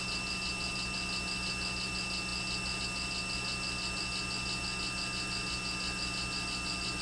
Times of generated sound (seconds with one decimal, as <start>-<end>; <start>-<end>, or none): none